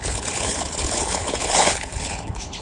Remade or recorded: remade